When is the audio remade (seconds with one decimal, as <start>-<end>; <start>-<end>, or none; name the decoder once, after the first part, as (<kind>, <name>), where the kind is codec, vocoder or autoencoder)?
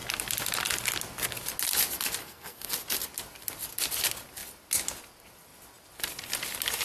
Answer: 2.2-2.7 (codec, SNAC)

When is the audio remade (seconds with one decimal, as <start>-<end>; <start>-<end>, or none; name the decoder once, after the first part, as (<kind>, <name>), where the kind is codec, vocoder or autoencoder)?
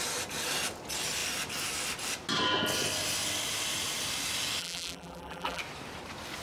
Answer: 4.6-5.6 (vocoder, BigVGAN v2)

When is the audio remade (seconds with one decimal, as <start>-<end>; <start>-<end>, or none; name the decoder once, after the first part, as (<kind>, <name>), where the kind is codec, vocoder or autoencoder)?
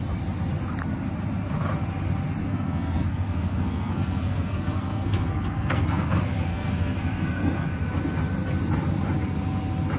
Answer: 2.4-6.1 (codec, SNAC); 6.5-7.7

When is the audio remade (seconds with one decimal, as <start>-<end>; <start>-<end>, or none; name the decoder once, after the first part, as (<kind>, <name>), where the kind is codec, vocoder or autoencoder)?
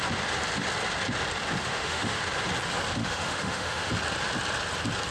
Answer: 1.6-2.2 (autoencoder, DAC-VAE); 3.0-3.9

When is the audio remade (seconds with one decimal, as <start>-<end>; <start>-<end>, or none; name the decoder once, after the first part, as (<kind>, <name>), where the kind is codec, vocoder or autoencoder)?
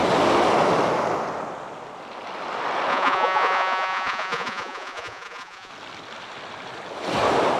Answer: 2.9-5.7 (vocoder, Vocos)